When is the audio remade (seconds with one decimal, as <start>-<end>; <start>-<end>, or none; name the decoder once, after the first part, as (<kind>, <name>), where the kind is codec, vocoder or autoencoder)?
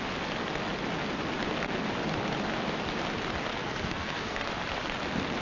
3.5-4.5 (codec, SNAC)